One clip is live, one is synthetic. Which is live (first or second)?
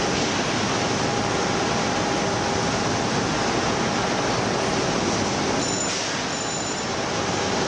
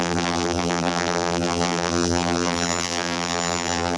first